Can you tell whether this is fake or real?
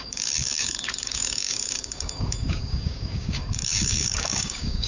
fake